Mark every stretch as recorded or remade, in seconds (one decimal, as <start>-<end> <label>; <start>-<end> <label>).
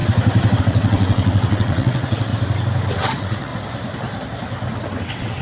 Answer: 0.0-0.6 recorded; 0.6-2.3 remade; 2.3-2.9 recorded; 2.9-3.5 remade; 3.5-5.0 recorded; 5.0-5.4 remade